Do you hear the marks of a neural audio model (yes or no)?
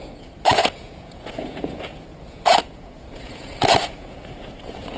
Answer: yes